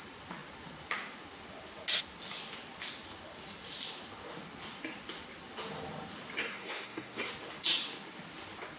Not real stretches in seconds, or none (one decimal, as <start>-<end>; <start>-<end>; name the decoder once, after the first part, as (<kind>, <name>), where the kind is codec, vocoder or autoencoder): 6.4-7.3 (codec, SNAC)